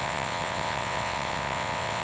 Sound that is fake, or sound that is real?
fake